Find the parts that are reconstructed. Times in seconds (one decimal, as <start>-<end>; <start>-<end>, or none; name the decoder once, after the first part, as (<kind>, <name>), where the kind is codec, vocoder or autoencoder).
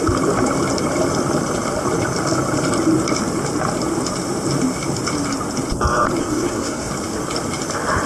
6.2-6.9 (codec, SNAC)